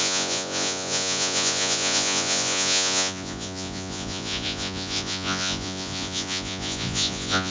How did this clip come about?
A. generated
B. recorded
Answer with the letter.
A